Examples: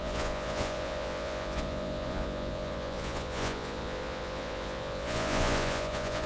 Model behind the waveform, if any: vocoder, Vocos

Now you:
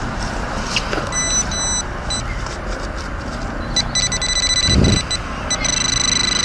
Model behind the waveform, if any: none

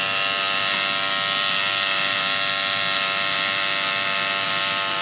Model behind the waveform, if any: none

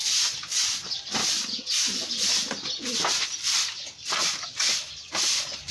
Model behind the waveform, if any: none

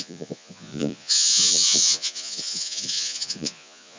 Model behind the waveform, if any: vocoder, Vocos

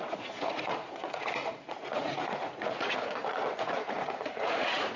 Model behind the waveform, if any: vocoder, Vocos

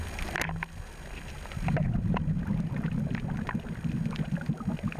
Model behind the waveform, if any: none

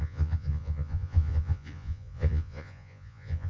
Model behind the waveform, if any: vocoder, Vocos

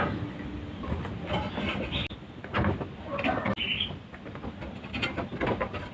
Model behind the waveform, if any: none